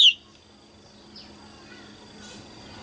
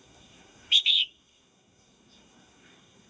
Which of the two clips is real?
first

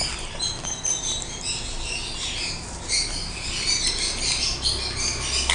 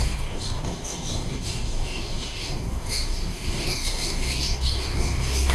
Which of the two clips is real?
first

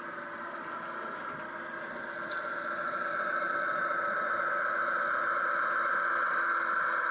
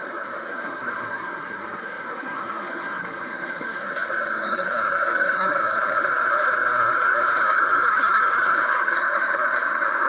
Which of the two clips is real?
first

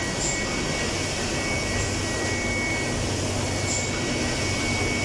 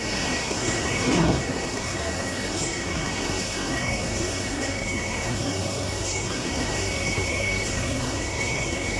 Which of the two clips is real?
first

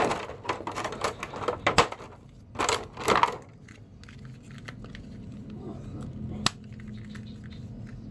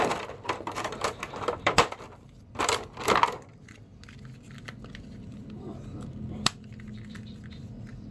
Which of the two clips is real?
first